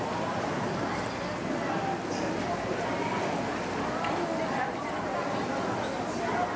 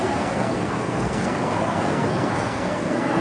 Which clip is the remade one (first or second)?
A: second